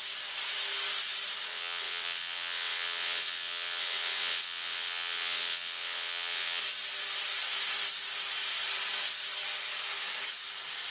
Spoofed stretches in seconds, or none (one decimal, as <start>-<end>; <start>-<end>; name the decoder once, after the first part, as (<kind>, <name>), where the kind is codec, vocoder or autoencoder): 1.5-6.6 (vocoder, WaveNeXt)